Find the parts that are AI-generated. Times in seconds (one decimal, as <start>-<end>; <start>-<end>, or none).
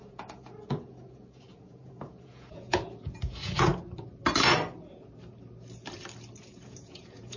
0.0-3.7; 6.4-7.4